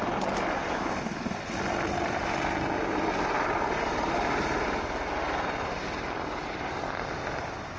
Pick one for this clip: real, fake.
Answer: real